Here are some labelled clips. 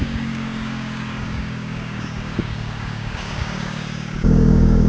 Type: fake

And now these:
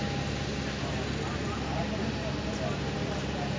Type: real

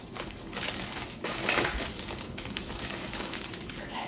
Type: fake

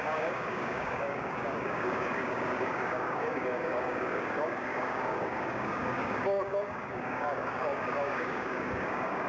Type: fake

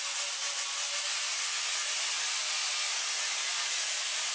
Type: real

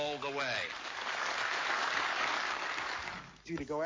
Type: fake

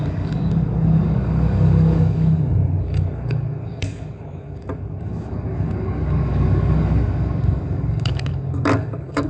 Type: fake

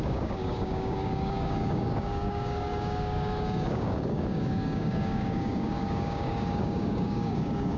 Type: fake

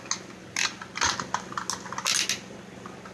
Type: real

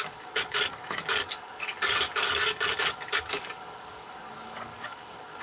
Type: fake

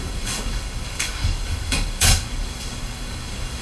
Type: fake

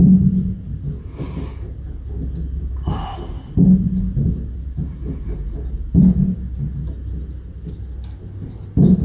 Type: real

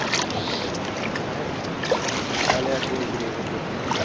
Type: real